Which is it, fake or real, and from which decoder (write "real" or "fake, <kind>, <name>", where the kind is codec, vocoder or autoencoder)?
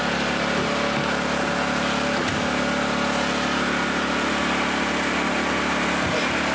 real